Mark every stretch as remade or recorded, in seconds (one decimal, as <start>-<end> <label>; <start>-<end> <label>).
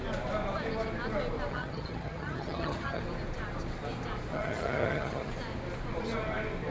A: 0.0-1.5 recorded; 1.5-3.0 remade; 3.0-4.3 recorded; 4.3-5.3 remade; 5.3-6.7 recorded